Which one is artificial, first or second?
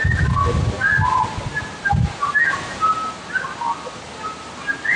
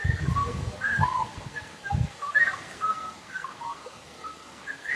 second